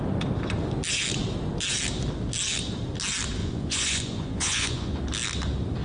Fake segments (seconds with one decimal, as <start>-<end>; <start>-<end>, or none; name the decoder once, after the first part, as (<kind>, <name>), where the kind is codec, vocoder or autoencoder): 3.4-5.0 (vocoder, Vocos)